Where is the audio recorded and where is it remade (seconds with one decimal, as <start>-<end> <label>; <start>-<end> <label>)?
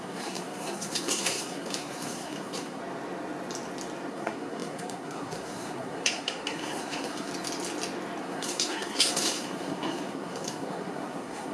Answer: 0.0-2.8 remade; 2.8-4.1 recorded; 4.1-7.3 remade; 7.3-8.2 recorded; 8.2-11.5 remade